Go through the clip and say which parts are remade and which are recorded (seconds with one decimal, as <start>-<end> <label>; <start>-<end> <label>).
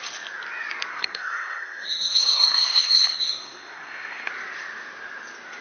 0.0-0.9 recorded; 0.9-4.3 remade; 4.3-5.6 recorded